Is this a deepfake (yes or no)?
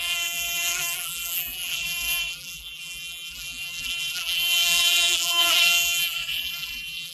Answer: yes